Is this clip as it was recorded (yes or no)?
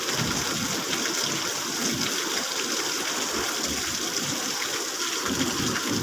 yes